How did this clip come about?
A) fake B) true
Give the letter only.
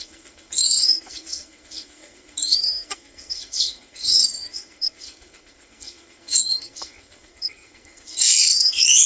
A